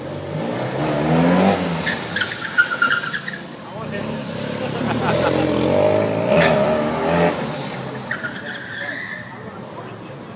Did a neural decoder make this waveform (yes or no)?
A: no